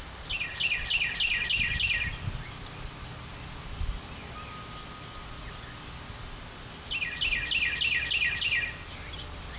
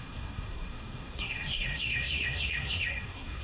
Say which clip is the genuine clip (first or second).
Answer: first